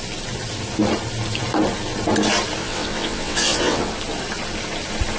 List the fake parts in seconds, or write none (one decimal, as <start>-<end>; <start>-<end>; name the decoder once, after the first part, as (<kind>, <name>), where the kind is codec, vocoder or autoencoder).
2.6-3.9 (vocoder, WaveNeXt)